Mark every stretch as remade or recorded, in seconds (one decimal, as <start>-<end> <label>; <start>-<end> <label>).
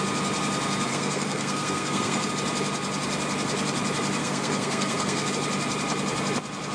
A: 0.0-0.9 recorded; 0.9-2.3 remade; 2.3-4.2 recorded; 4.2-5.3 remade; 5.3-6.7 recorded